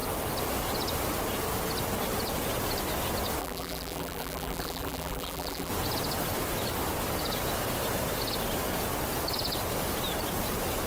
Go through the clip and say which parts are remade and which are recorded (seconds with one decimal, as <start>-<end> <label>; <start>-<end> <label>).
0.0-3.4 recorded; 3.4-5.7 remade; 5.7-10.9 recorded